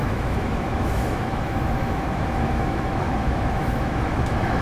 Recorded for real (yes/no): no